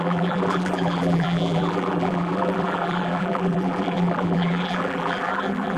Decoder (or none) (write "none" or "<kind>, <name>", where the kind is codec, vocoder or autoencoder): vocoder, BigVGAN v2